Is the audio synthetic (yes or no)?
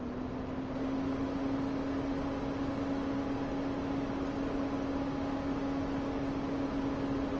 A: no